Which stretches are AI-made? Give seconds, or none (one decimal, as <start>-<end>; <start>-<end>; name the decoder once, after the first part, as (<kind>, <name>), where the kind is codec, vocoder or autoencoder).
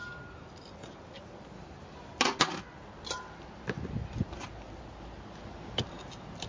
none